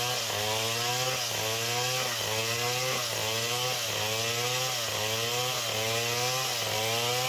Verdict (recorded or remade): recorded